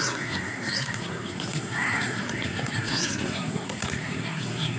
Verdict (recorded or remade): remade